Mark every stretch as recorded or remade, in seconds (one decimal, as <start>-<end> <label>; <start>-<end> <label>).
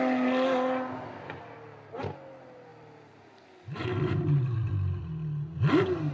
0.0-2.7 recorded; 2.7-5.0 remade; 5.0-6.1 recorded